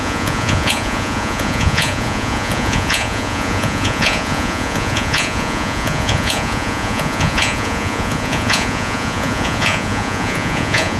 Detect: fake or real fake